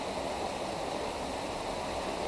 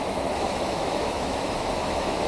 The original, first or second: first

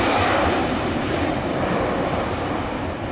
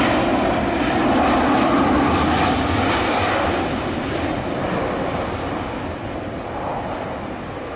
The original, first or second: second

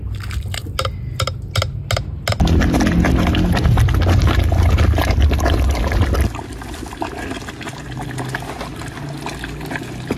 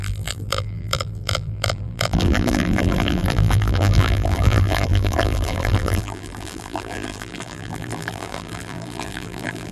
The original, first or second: first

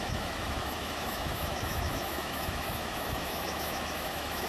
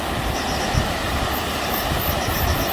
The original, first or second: second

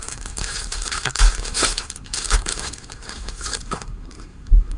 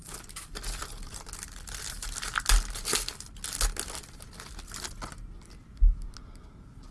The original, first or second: second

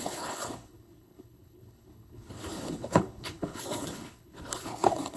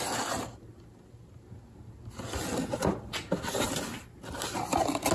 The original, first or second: second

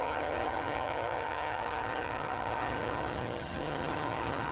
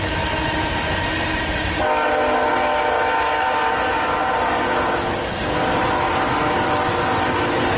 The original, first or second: second